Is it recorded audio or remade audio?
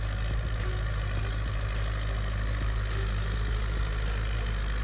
recorded